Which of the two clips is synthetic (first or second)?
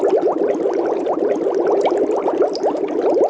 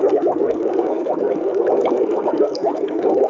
second